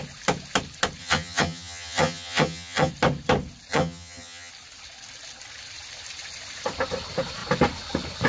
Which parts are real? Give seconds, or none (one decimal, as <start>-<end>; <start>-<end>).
0.0-1.0; 2.9-3.7; 4.5-8.3